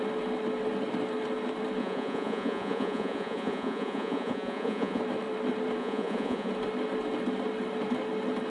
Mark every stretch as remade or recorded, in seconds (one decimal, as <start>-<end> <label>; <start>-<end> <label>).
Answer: 0.0-1.8 recorded; 1.8-5.0 remade; 5.0-5.8 recorded; 5.8-6.5 remade; 6.5-8.5 recorded